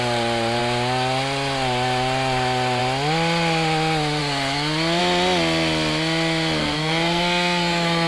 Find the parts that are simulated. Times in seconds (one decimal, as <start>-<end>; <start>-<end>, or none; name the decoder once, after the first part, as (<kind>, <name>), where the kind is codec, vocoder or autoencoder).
6.6-8.1 (codec, SNAC)